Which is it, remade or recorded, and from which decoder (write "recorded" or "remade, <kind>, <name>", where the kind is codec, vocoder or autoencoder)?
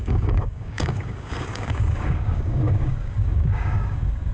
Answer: remade, codec, DAC